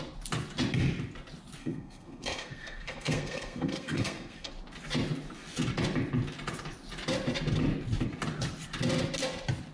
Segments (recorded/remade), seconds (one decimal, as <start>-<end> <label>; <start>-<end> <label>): 0.0-1.6 recorded; 1.6-4.5 remade; 4.5-9.7 recorded